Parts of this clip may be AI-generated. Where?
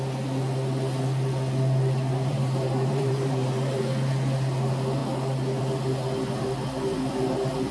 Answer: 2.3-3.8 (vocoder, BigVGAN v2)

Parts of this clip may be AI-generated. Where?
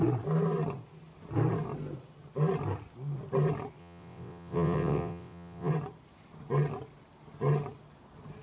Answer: 3.8-5.7 (vocoder, WaveNeXt)